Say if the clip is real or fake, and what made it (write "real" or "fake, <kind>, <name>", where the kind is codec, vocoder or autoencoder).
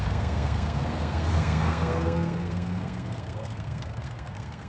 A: fake, codec, SNAC